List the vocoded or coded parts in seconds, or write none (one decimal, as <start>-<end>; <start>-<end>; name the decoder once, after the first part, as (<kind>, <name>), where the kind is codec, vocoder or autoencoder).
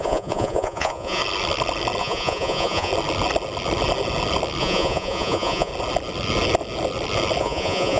0.0-1.2 (vocoder, Vocos); 2.0-2.9; 4.6-5.7; 7.4-8.0